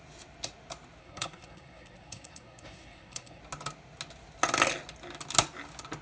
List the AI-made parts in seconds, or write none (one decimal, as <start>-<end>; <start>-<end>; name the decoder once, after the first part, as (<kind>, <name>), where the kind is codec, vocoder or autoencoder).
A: 1.0-3.4 (codec, SNAC)